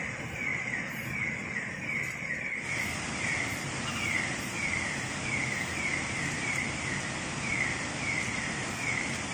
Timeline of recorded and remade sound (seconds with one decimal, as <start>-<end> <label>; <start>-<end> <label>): 0.0-9.3 recorded